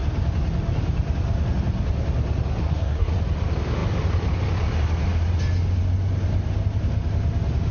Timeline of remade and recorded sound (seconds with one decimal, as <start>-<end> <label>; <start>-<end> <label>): 0.0-2.6 recorded; 2.6-3.2 remade; 3.2-7.7 recorded